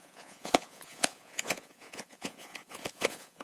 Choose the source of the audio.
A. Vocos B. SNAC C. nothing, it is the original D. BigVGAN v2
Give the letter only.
A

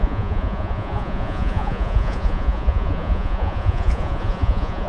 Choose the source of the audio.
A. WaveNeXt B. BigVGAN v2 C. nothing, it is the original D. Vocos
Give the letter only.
D